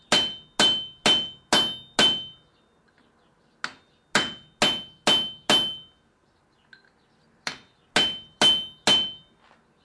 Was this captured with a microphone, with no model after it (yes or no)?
yes